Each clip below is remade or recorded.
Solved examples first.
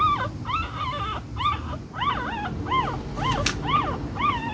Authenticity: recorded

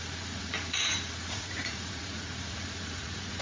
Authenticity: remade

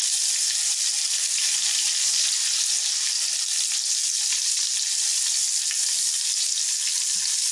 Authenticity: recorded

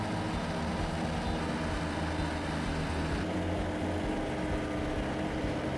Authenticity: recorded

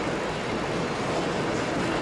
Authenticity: recorded